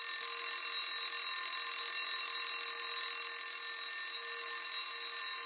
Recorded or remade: recorded